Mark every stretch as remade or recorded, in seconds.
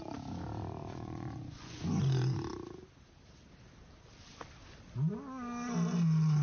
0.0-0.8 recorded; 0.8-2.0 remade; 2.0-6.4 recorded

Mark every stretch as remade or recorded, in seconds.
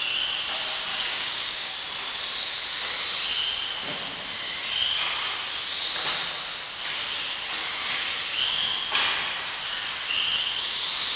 0.0-0.9 recorded; 0.9-1.7 remade; 1.7-11.2 recorded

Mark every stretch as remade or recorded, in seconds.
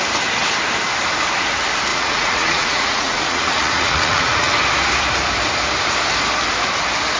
0.0-1.9 recorded; 1.9-4.5 remade; 4.5-7.2 recorded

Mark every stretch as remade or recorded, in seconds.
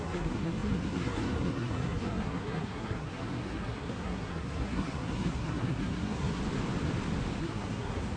0.0-6.4 remade; 6.4-7.4 recorded; 7.4-8.2 remade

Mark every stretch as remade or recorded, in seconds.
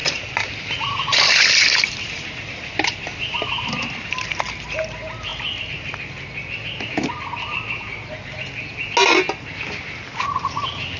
0.0-0.5 remade; 0.5-11.0 recorded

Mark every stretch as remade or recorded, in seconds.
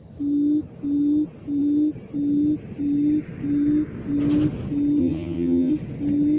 0.0-5.0 recorded; 5.0-5.7 remade; 5.7-6.4 recorded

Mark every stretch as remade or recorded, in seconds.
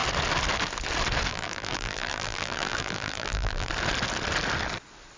0.0-1.3 recorded; 1.3-3.7 remade; 3.7-5.2 recorded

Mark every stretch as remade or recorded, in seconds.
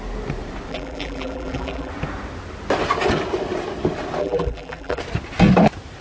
0.0-0.7 recorded; 0.7-1.9 remade; 1.9-4.2 recorded; 4.2-5.0 remade; 5.0-6.0 recorded